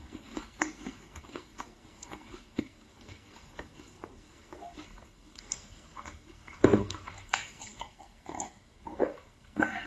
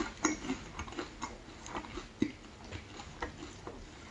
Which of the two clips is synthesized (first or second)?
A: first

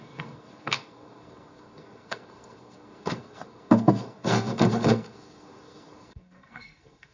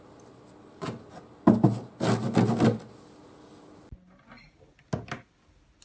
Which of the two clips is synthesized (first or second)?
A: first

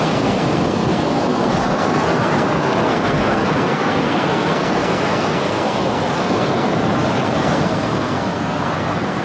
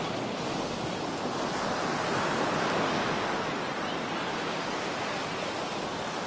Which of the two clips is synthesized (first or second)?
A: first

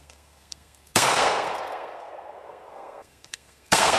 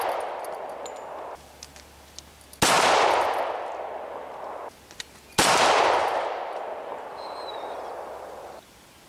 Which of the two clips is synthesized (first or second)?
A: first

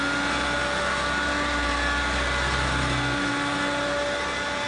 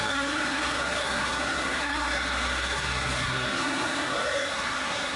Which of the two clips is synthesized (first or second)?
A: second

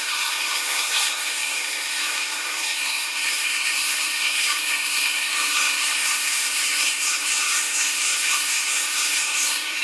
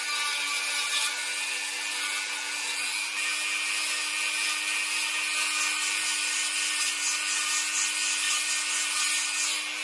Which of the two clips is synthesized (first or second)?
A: first